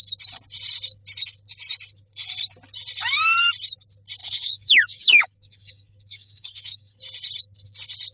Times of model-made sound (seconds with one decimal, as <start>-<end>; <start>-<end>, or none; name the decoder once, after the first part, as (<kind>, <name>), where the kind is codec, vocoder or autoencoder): 4.2-7.0 (codec, DAC)